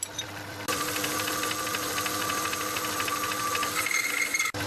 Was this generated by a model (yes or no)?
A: no